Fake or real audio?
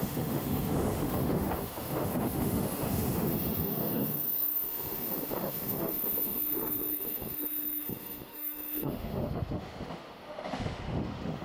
fake